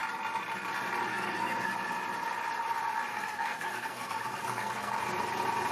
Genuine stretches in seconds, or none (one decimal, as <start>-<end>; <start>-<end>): 0.0-1.1; 1.7-3.1; 5.0-5.7